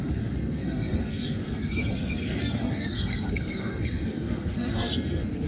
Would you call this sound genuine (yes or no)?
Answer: no